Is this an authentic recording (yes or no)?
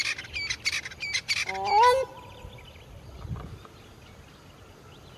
yes